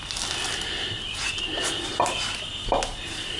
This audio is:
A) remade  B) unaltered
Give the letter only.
B